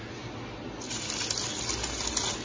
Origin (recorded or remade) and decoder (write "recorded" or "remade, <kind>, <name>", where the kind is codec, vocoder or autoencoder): recorded